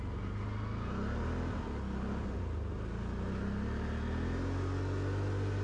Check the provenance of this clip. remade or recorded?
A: recorded